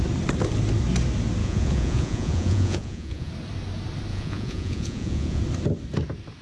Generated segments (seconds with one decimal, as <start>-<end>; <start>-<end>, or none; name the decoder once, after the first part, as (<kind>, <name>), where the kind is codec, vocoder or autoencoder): 1.4-3.3 (vocoder, Vocos); 4.1-5.4